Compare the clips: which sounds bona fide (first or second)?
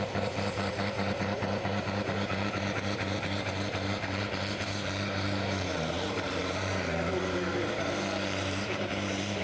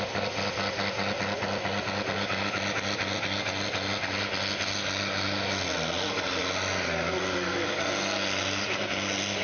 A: second